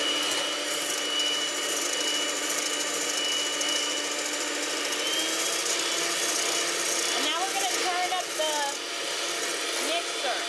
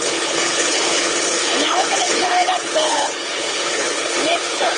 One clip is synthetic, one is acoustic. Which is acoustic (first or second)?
first